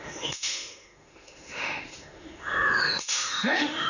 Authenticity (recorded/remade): remade